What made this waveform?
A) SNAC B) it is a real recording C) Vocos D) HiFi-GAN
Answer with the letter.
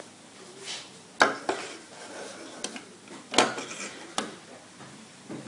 B